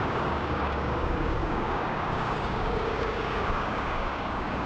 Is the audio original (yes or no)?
no